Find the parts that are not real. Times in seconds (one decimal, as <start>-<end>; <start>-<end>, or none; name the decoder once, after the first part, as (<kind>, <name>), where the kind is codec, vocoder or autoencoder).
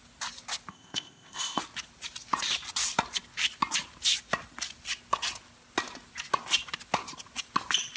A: 0.7-1.6 (codec, ZipCodec)